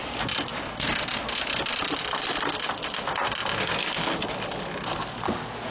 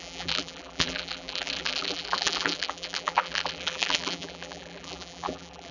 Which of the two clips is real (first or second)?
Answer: first